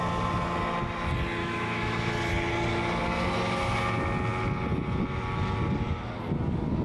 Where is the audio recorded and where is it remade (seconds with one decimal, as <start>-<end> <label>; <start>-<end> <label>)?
0.0-1.4 recorded; 1.4-2.1 remade; 2.1-6.8 recorded